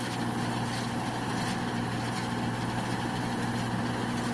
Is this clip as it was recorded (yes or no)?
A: yes